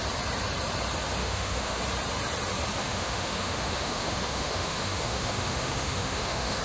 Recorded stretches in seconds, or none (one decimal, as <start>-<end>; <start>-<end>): 0.0-1.2; 1.8-2.8

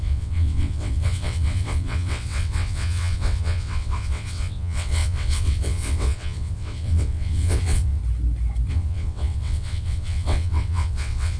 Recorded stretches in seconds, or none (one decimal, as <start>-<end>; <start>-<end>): 8.0-8.7

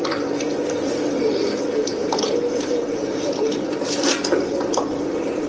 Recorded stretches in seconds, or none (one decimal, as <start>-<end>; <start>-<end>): 0.0-2.0; 4.0-5.5

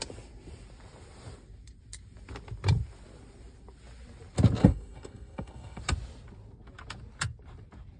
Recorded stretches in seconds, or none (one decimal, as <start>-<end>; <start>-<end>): 0.0-4.6; 5.8-8.0

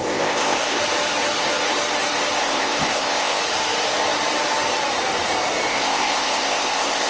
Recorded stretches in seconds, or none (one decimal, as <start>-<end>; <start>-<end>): 0.8-2.4; 3.4-5.7

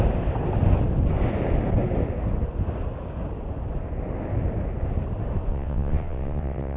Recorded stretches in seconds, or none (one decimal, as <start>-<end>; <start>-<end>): 0.0-5.5

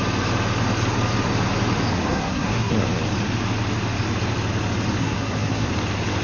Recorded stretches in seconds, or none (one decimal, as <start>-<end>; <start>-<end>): 0.0-2.1; 2.7-5.0; 5.7-6.2